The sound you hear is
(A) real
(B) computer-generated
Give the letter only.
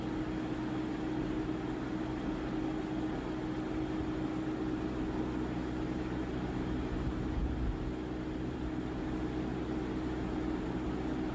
A